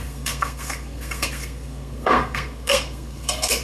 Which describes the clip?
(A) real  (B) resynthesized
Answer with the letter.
B